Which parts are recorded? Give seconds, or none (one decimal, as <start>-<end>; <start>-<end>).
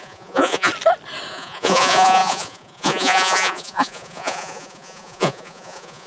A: 0.7-1.3